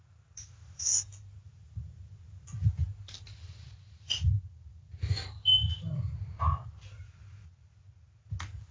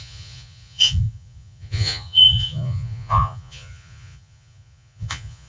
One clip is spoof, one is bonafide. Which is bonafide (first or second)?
first